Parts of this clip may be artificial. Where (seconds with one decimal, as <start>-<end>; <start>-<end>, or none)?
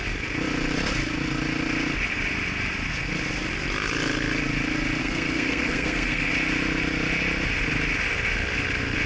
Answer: 5.0-6.3